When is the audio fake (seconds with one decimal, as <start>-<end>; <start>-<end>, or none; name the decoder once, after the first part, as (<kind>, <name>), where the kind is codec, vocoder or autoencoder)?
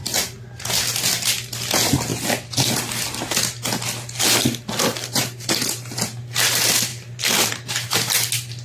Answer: none